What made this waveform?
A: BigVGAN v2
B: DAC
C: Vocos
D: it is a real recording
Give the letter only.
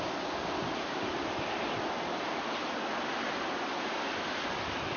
D